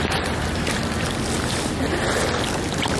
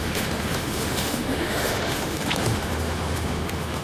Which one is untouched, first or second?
first